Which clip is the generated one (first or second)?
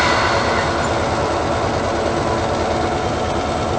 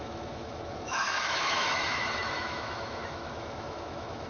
second